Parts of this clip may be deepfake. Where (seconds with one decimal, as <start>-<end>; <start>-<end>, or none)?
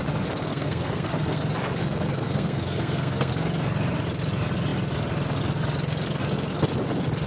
0.4-1.4; 1.8-3.3